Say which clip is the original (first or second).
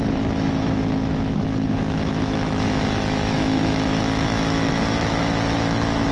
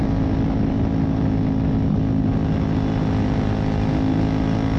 second